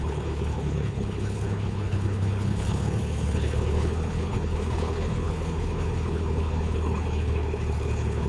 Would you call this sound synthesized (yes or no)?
yes